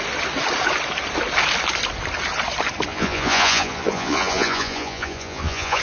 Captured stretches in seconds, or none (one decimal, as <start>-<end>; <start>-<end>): 0.0-2.9